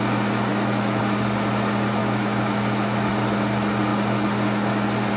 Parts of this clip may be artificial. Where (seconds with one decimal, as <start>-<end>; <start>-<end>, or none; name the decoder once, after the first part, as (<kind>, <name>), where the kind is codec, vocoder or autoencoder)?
0.5-1.0 (autoencoder, DAC-VAE); 2.0-3.1